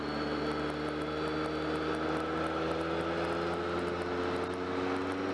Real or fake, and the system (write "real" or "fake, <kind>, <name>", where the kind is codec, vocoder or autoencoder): real